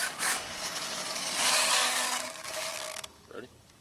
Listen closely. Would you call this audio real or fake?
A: fake